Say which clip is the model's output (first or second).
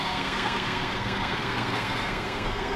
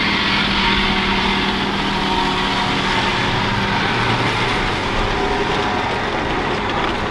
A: first